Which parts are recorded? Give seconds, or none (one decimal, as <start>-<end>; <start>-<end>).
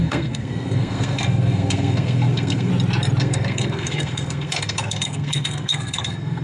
2.7-3.2